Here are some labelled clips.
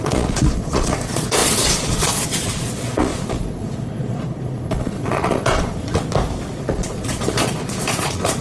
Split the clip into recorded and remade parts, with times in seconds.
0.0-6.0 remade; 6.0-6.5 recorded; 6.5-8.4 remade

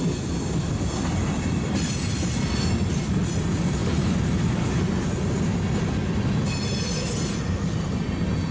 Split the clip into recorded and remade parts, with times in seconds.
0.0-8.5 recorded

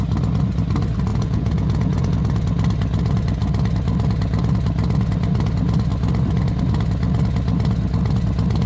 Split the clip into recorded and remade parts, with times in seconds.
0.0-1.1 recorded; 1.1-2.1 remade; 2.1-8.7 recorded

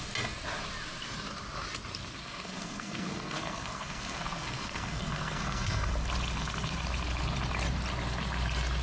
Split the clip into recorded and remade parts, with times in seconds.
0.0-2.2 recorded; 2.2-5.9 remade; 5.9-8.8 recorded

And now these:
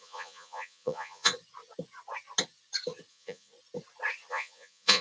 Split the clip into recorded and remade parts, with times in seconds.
0.0-1.3 remade; 1.3-3.1 recorded; 3.1-3.5 remade; 3.5-4.3 recorded; 4.3-5.0 remade

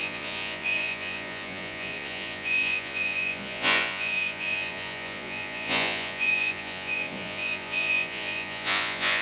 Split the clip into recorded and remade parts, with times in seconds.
0.0-9.2 remade

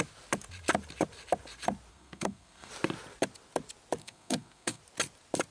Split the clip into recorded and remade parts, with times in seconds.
0.0-1.9 recorded; 1.9-2.7 remade; 2.7-4.0 recorded; 4.0-4.8 remade; 4.8-5.5 recorded